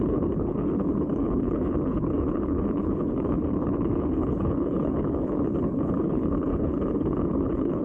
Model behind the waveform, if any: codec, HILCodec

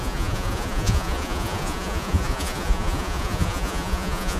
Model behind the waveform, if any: vocoder, Vocos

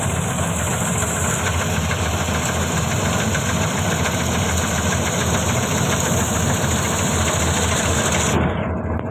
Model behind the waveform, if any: none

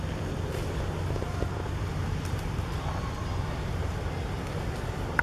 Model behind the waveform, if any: none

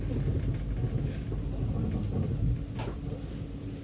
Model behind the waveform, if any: none